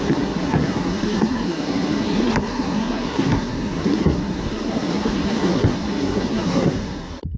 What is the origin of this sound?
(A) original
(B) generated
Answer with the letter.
B